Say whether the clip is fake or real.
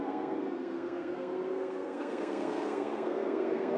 fake